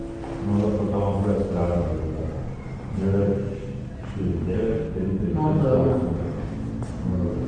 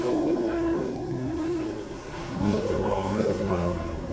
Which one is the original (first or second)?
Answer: first